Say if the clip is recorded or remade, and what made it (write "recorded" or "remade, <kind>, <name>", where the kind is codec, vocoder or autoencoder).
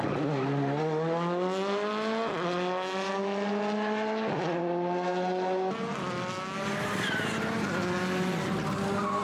recorded